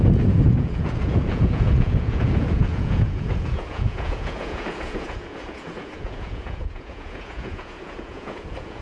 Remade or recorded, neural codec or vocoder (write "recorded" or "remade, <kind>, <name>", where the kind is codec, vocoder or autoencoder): remade, vocoder, Vocos